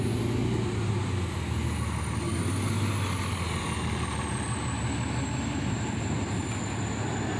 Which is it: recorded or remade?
recorded